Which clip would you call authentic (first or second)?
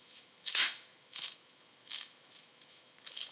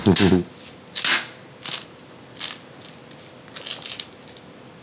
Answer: second